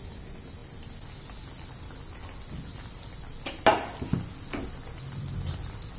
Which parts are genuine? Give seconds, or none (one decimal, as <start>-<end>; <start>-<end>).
0.0-6.0